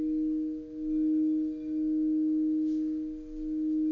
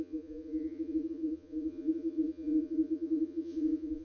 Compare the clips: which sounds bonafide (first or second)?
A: first